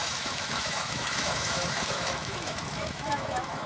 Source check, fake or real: fake